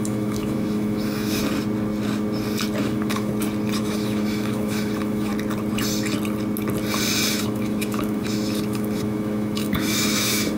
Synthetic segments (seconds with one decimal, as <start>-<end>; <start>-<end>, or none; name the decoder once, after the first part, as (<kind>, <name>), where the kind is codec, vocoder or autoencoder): 0.0-1.4 (autoencoder, DAC-VAE); 2.8-3.3; 3.8-5.3; 7.3-10.6